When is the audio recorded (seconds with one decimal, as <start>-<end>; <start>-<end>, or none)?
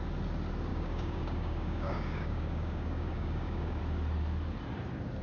0.0-0.7; 3.8-5.2